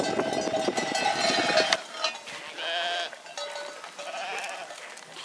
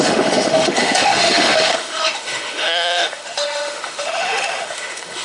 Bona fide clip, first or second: first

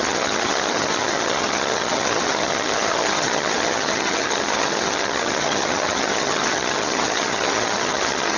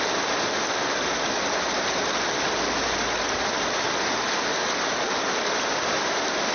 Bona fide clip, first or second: second